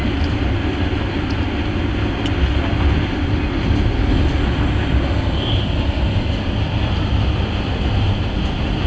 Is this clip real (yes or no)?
yes